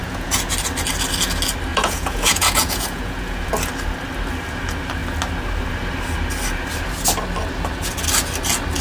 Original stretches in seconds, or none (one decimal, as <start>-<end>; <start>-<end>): 0.5-1.7; 3.5-8.8